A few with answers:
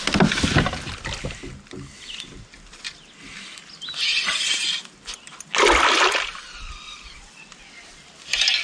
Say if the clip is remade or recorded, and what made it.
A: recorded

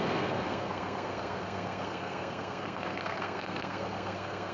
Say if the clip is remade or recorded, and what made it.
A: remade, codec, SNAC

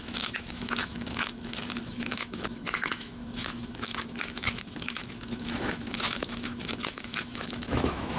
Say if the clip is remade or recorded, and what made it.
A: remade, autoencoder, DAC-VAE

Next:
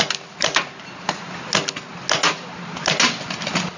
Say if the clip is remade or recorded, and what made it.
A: recorded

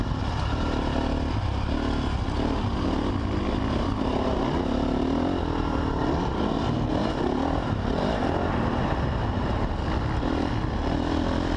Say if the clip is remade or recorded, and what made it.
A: recorded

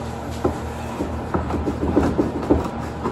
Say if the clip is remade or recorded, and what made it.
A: recorded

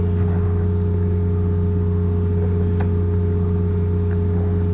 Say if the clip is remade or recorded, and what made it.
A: recorded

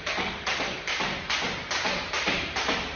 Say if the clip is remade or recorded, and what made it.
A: remade, vocoder, BigVGAN v2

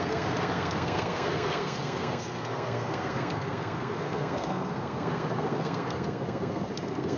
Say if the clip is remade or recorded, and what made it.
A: remade, codec, SNAC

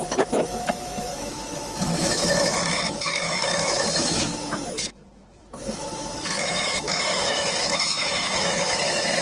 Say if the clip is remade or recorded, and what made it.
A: remade, autoencoder, DAC-VAE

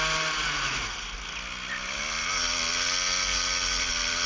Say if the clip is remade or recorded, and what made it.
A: recorded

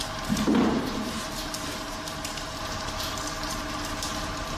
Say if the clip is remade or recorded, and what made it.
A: remade, vocoder, BigVGAN v2